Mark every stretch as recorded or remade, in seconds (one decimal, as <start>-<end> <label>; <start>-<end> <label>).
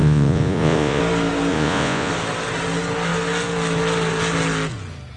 0.0-1.0 remade; 1.0-1.5 recorded; 1.5-2.1 remade; 2.1-5.2 recorded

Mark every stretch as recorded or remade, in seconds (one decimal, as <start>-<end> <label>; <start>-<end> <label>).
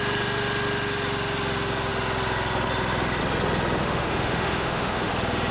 0.0-3.8 recorded; 3.8-5.1 remade; 5.1-5.5 recorded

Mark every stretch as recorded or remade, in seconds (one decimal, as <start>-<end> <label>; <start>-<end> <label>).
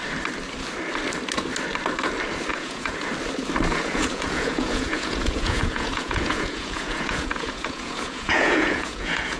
0.0-2.5 recorded; 2.5-3.1 remade; 3.1-3.7 recorded; 3.7-9.4 remade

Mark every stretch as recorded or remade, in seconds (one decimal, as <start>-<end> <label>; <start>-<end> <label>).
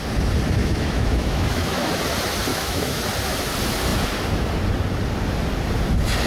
0.0-0.6 recorded; 0.6-2.0 remade; 2.0-2.5 recorded; 2.5-3.0 remade; 3.0-6.3 recorded